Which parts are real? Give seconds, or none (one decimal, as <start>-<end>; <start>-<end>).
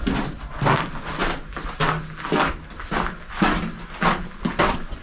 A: 0.0-5.0